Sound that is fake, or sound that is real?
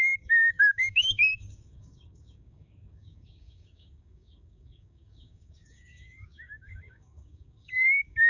fake